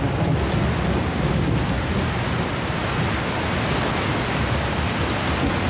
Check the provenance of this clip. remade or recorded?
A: recorded